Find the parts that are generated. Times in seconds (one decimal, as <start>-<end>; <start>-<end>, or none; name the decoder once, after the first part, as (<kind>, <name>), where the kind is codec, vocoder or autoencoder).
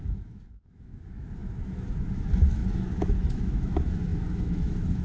0.0-5.0 (autoencoder, DAC-VAE)